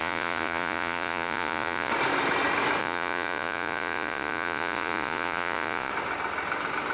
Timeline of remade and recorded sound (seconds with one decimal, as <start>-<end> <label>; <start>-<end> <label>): 0.0-1.9 remade; 1.9-2.8 recorded; 2.8-5.9 remade; 5.9-6.9 recorded